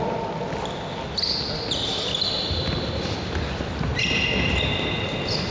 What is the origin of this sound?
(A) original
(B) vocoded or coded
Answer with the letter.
A